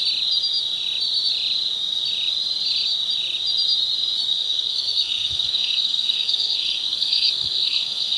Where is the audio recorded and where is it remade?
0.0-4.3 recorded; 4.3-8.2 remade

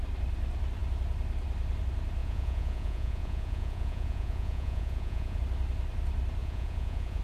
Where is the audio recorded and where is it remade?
0.0-2.2 recorded; 2.2-5.4 remade; 5.4-6.4 recorded; 6.4-7.2 remade

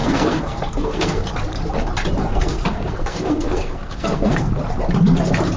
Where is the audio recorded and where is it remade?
0.0-1.3 remade; 1.3-2.2 recorded; 2.2-4.5 remade; 4.5-5.6 recorded

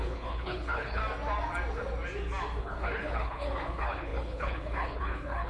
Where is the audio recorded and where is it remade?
0.0-1.0 remade; 1.0-2.6 recorded; 2.6-5.5 remade

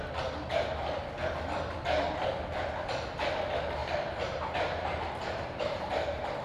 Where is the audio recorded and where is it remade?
0.0-3.8 recorded; 3.8-5.8 remade; 5.8-6.4 recorded

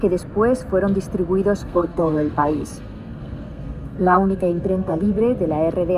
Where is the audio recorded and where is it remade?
0.0-1.6 recorded; 1.6-5.2 remade; 5.2-6.0 recorded

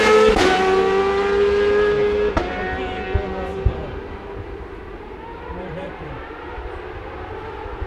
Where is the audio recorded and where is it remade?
0.0-3.5 recorded; 3.5-6.7 remade; 6.7-7.9 recorded